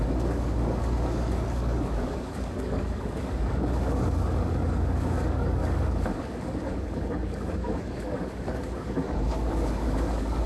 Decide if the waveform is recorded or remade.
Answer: remade